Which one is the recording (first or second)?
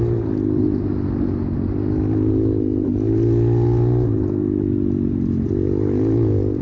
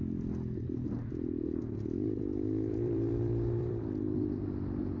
first